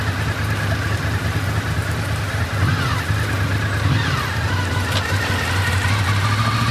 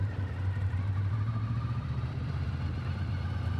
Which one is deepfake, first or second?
second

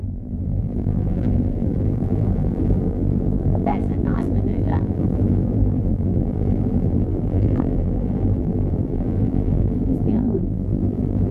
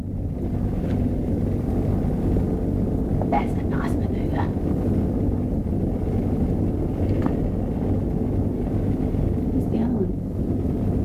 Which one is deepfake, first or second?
first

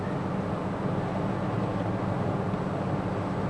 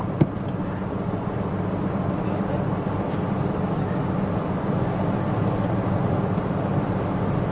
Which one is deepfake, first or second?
second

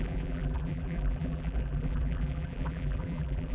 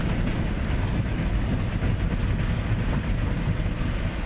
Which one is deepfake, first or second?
first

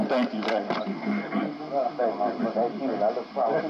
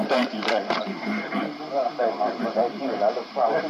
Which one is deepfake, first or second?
second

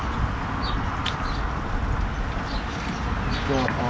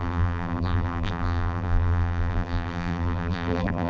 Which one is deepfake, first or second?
second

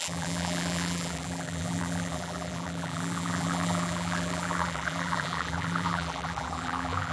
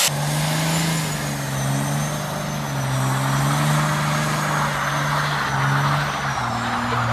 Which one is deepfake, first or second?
first